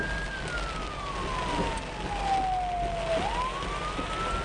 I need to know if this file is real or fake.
real